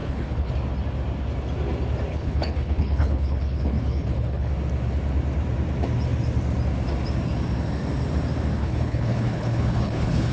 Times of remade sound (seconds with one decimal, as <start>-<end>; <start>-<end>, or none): 0.0-0.5; 2.1-4.5; 8.6-10.3